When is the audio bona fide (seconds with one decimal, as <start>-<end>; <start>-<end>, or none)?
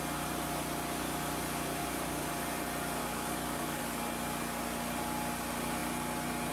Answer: 0.0-1.8; 2.3-3.0; 3.8-6.5